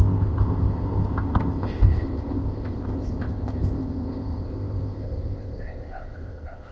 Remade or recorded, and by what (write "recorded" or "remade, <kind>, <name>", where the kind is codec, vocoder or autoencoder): remade, codec, ZipCodec